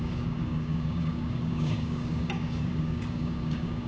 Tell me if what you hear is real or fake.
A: fake